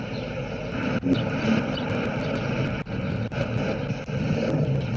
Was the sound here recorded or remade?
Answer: recorded